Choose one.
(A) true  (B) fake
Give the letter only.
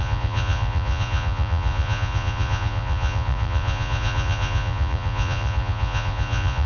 B